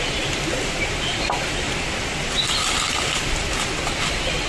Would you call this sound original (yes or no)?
yes